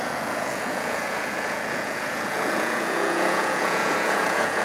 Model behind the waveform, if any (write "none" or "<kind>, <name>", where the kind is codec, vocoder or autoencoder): vocoder, Vocos